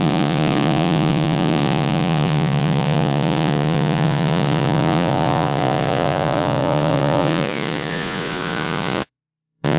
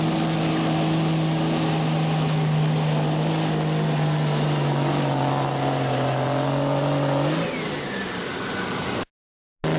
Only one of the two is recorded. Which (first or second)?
second